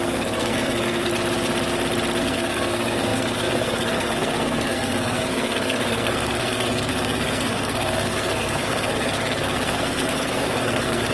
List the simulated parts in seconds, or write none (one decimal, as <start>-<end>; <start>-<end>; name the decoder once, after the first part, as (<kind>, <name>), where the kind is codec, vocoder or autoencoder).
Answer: 0.0-1.1 (codec, SNAC); 2.2-11.1